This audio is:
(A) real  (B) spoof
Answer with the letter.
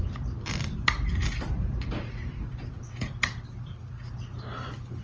B